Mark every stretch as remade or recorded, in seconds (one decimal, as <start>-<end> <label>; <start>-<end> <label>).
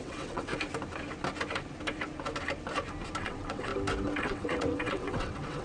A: 0.0-0.5 remade; 0.5-3.2 recorded; 3.2-3.7 remade; 3.7-4.2 recorded; 4.2-5.6 remade